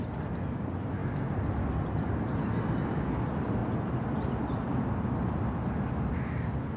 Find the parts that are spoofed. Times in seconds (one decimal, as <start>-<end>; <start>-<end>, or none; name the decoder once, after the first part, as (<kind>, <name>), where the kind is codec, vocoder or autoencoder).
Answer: 3.6-4.4 (vocoder, BigVGAN v2)